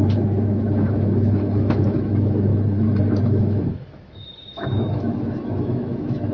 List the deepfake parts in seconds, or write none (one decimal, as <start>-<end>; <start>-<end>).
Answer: 0.0-2.5; 3.2-6.3